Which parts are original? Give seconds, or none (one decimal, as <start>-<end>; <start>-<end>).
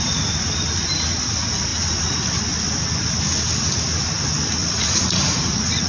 0.0-4.6